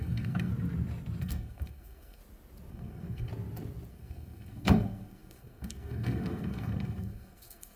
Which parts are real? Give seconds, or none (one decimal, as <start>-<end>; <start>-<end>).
0.5-1.2; 2.2-2.7; 3.3-3.9